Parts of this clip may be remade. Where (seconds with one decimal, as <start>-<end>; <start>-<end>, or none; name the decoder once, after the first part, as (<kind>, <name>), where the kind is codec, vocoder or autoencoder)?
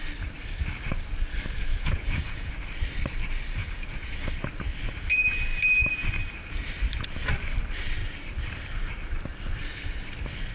1.7-2.5 (vocoder, Vocos); 3.6-4.1